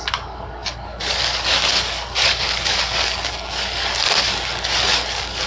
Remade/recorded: remade